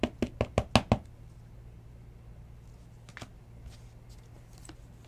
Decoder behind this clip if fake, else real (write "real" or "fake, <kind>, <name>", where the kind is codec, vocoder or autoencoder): real